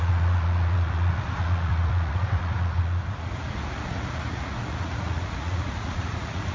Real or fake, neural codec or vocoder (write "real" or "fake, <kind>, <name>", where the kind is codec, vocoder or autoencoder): fake, vocoder, Vocos